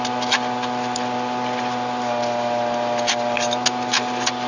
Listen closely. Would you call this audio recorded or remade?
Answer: recorded